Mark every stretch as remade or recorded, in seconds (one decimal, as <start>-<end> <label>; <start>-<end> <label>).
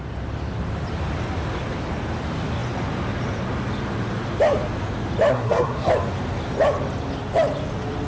0.0-5.3 recorded; 5.3-5.9 remade; 5.9-8.1 recorded